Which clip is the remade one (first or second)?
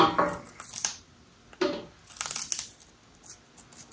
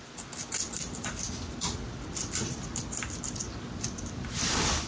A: second